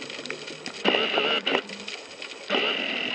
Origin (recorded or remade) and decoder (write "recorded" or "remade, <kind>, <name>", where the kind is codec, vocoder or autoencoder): recorded